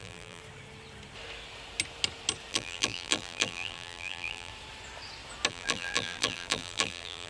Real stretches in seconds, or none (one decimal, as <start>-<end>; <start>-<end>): 0.4-2.5; 4.5-5.5